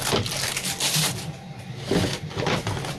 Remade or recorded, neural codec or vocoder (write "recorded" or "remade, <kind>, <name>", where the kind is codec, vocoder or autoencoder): recorded